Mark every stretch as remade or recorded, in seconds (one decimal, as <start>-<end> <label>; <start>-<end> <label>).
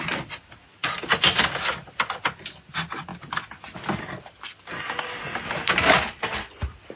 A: 0.0-0.8 recorded; 0.8-1.4 remade; 1.4-7.0 recorded